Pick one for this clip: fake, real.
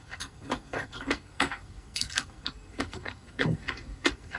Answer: fake